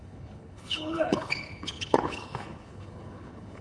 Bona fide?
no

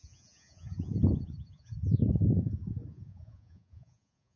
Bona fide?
no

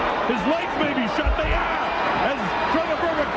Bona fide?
yes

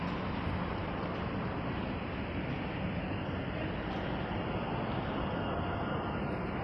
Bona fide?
yes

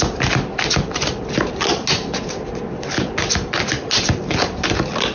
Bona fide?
yes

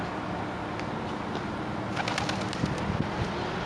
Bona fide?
yes